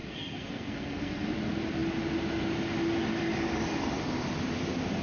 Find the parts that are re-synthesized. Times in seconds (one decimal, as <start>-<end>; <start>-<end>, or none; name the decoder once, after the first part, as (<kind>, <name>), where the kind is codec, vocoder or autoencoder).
0.0-1.3 (codec, SNAC)